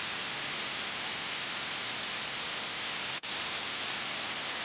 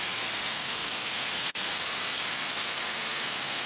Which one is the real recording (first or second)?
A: first